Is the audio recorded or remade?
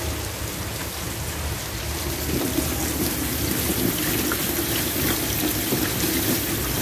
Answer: recorded